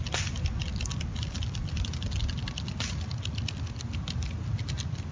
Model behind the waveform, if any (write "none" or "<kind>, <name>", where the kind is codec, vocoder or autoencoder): none